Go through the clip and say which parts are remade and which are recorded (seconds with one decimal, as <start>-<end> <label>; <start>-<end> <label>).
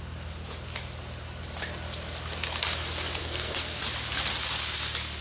0.0-3.2 recorded; 3.2-3.8 remade; 3.8-5.2 recorded